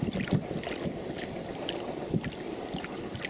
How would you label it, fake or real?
real